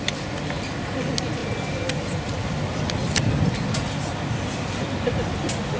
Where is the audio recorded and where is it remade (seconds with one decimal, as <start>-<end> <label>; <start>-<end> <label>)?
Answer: 0.0-5.8 recorded